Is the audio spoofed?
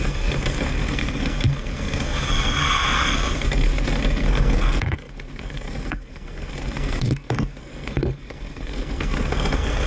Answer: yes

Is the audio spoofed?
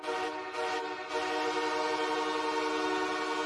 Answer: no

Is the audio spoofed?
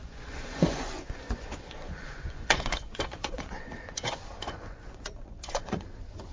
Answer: yes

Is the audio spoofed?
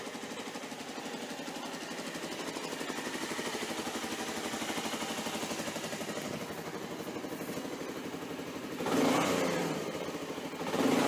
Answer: no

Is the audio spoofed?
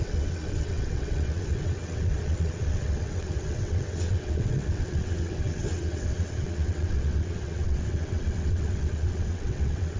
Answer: yes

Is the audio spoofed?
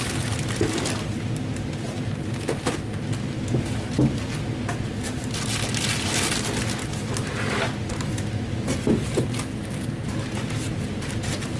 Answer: no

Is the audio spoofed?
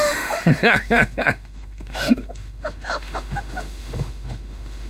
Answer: yes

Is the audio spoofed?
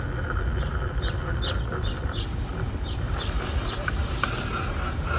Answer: no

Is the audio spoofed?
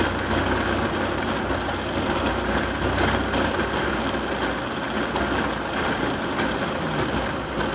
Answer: no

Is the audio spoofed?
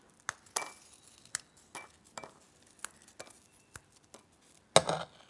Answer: no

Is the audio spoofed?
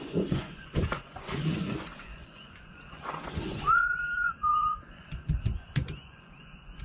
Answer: yes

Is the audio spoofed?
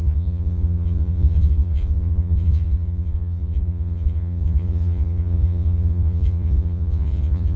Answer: yes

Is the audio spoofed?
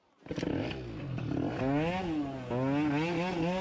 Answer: no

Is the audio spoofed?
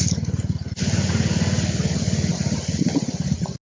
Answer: no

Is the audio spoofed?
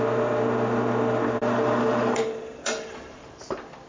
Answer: yes